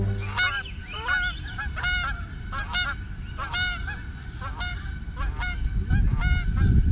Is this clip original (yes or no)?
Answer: yes